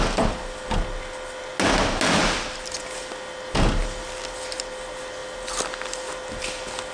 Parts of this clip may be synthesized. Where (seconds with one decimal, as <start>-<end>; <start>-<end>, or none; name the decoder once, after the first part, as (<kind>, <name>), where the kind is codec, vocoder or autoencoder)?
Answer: none